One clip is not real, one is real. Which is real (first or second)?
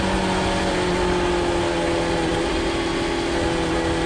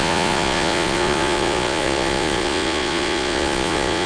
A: first